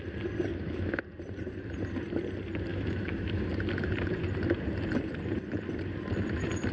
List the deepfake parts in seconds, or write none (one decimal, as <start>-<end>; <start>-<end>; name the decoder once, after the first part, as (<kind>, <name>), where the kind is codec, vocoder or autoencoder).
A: 0.5-1.0 (autoencoder, DAC-VAE); 2.7-3.5